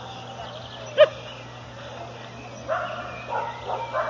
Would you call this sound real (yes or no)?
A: yes